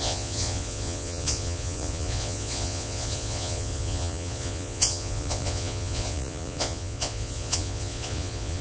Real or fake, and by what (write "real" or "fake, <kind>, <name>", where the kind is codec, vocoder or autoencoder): fake, vocoder, Vocos